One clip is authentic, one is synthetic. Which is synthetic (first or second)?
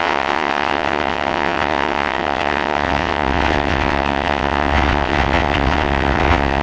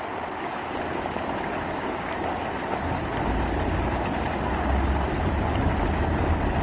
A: first